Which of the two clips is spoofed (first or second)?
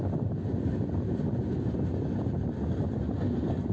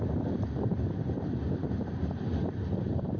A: second